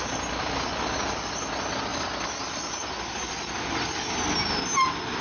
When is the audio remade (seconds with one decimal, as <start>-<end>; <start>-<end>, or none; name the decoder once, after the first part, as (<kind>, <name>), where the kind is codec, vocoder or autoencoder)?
none